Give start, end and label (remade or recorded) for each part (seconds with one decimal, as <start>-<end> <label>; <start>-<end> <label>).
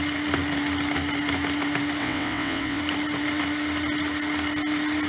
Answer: 0.0-2.0 recorded; 2.0-2.8 remade; 2.8-5.1 recorded